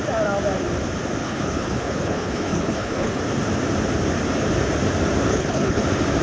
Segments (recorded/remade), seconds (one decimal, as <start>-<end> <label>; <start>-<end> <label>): 0.0-1.2 recorded; 1.2-3.2 remade; 3.2-5.3 recorded; 5.3-5.8 remade; 5.8-6.2 recorded

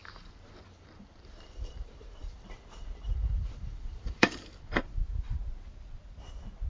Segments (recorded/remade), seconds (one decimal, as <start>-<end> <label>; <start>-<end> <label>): 0.0-5.0 remade; 5.0-6.7 recorded